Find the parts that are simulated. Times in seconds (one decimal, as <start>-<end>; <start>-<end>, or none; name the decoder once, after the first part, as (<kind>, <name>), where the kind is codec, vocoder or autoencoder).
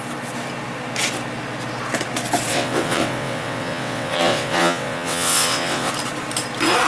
2.5-5.9 (vocoder, WaveNeXt)